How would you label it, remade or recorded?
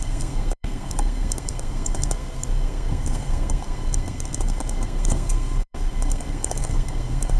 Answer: remade